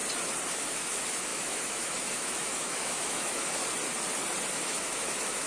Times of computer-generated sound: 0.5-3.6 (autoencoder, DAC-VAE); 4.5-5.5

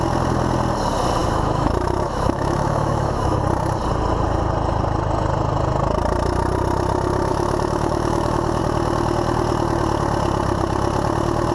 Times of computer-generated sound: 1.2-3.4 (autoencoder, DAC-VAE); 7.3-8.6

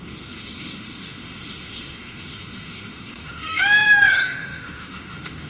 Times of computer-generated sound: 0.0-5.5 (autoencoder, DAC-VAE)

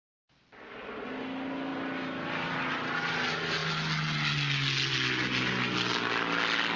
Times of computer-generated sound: none

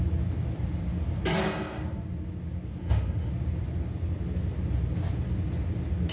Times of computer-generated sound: 2.8-3.3 (autoencoder, DAC-VAE)